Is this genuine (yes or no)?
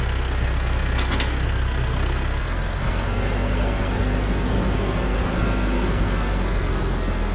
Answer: no